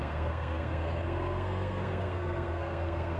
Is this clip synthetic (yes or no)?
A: yes